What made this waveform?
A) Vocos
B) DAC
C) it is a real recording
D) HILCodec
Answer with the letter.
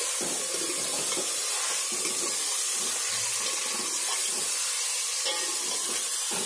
C